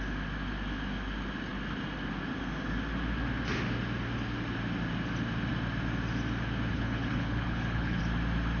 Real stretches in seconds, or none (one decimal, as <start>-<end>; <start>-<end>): 0.0-6.7; 8.0-8.6